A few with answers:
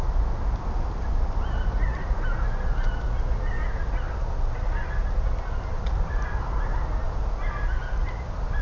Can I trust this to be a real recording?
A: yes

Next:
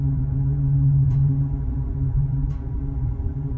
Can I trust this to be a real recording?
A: no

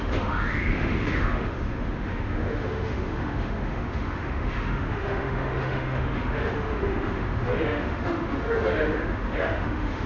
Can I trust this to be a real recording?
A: no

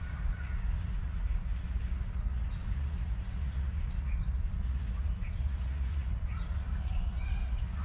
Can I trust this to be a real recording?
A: no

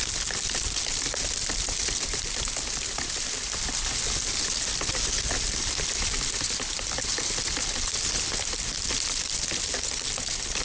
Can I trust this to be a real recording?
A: yes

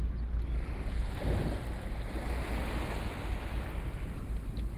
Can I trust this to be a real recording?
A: yes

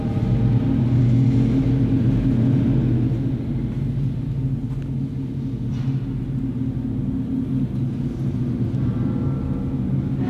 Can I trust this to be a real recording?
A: yes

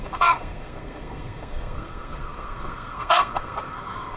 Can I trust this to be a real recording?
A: no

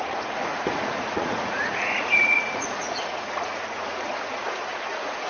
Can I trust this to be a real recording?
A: no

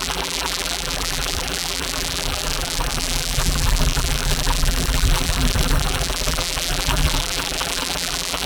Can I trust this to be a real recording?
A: no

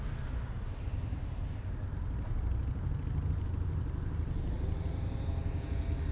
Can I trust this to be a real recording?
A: yes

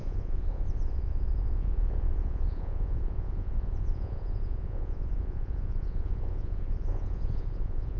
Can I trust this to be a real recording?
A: no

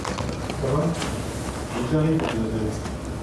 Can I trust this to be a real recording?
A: yes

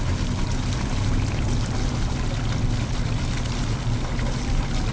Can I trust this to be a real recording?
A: yes